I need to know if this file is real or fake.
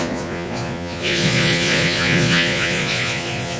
fake